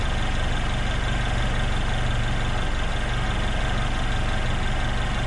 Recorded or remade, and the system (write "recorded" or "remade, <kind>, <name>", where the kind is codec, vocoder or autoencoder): recorded